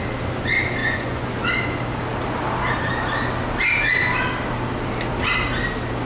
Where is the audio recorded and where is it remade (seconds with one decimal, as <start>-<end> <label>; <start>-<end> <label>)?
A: 0.0-0.8 recorded; 0.8-1.3 remade; 1.3-6.0 recorded